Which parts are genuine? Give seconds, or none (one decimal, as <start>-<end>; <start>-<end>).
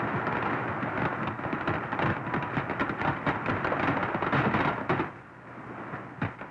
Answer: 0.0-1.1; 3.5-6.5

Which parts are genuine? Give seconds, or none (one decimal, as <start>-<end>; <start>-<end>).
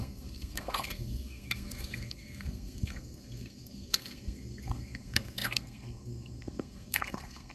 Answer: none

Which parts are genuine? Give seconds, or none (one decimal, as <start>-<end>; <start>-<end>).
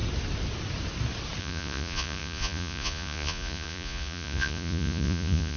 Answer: 0.0-1.4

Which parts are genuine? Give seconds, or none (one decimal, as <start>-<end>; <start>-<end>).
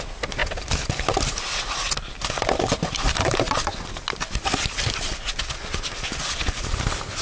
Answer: 0.0-7.2